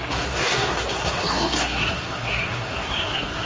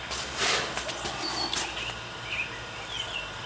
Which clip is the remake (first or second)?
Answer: first